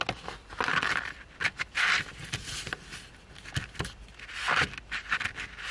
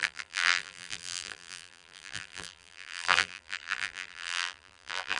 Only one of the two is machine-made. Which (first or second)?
second